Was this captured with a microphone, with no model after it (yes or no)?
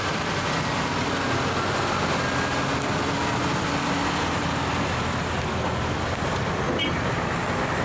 yes